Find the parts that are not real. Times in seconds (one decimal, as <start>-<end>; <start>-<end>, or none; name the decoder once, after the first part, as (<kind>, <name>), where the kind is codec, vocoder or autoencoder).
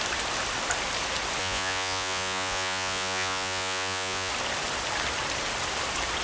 1.4-4.3 (vocoder, Vocos)